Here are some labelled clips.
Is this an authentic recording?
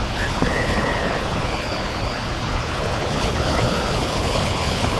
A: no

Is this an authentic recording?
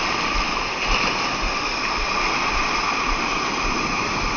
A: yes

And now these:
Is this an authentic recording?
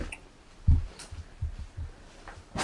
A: yes